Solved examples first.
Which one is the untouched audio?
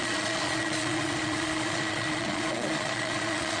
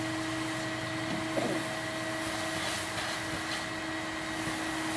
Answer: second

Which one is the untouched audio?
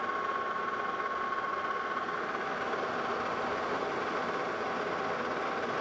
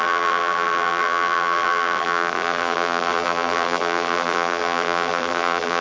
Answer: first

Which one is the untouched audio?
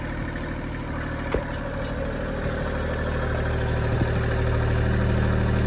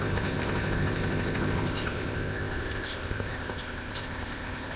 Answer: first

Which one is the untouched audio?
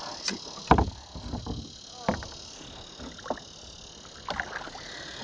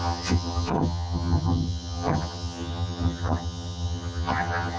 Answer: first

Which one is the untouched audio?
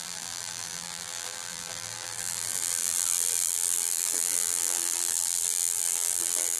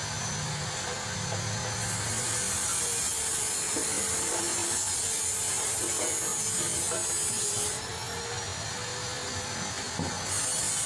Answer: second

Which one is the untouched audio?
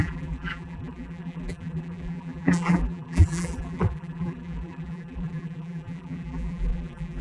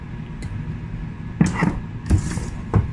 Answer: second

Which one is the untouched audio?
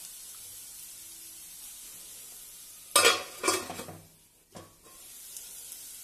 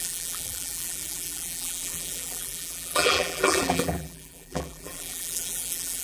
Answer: first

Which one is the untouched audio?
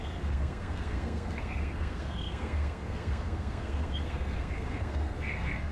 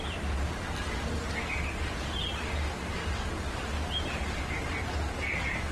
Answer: second